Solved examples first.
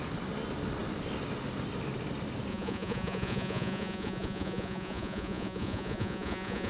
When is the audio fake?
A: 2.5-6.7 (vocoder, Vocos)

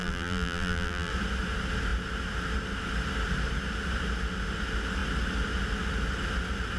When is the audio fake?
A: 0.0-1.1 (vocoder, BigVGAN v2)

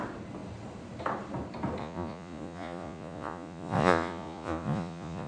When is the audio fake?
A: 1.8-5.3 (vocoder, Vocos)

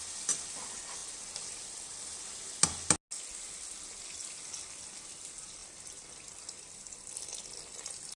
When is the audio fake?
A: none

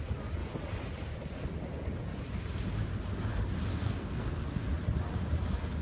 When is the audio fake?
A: 3.7-4.6 (codec, SNAC)

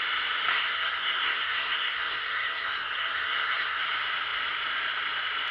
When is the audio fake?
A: 0.5-3.8 (codec, SNAC)

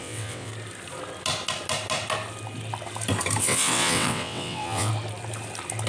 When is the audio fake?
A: 0.0-0.5 (vocoder, WaveNeXt); 3.4-4.9